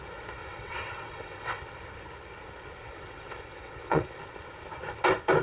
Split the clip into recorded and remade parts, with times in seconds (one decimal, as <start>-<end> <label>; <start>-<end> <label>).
0.0-0.4 recorded; 0.4-1.6 remade; 1.6-2.8 recorded; 2.8-4.2 remade; 4.2-5.4 recorded